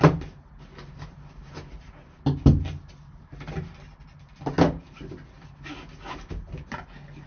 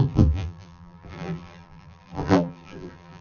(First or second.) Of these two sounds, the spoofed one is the second